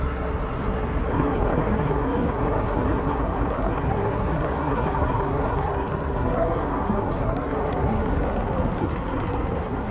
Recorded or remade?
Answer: remade